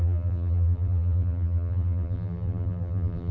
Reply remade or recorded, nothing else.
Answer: remade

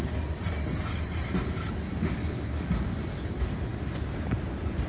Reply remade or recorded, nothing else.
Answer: recorded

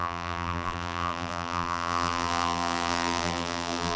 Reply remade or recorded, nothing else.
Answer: remade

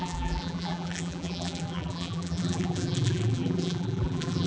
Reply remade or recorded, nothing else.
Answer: remade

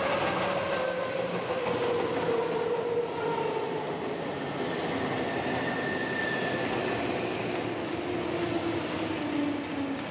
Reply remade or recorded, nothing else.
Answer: recorded